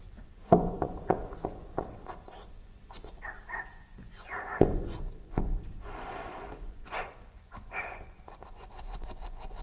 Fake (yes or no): yes